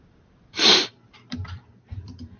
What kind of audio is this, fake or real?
fake